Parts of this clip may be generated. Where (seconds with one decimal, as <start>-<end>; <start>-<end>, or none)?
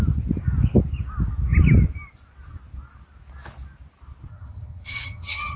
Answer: 4.3-5.6